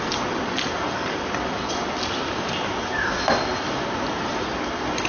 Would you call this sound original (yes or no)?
yes